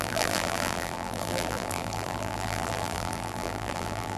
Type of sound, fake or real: fake